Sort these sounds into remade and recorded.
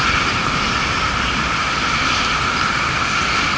recorded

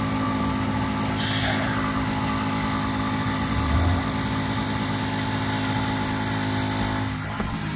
recorded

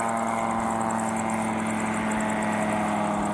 recorded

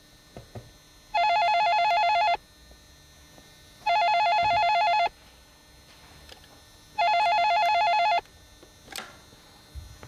recorded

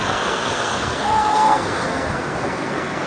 remade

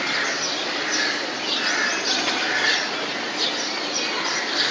recorded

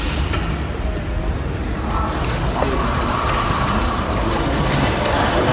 recorded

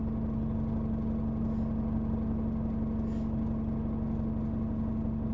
recorded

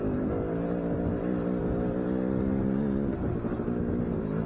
recorded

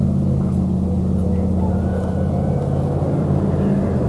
recorded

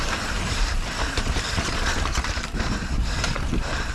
remade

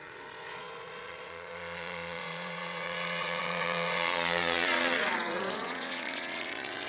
remade